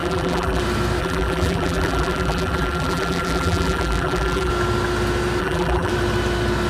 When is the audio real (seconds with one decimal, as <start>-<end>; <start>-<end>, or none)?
0.6-1.0; 4.5-5.4; 5.9-6.7